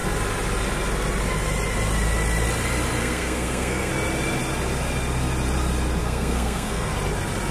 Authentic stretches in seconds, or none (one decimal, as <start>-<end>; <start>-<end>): 0.0-3.0; 3.9-6.0; 6.9-7.5